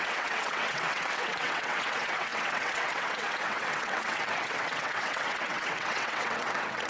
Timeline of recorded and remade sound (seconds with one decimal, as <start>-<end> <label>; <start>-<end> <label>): 0.0-6.9 remade